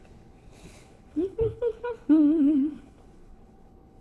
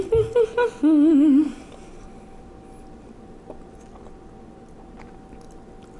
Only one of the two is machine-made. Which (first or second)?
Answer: first